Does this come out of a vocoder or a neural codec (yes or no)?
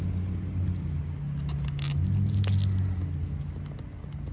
no